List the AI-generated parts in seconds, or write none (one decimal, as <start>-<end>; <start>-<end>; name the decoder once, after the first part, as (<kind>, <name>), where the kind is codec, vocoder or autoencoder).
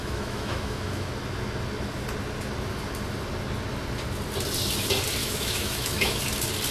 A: 0.0-1.1 (autoencoder, DAC-VAE); 5.2-6.2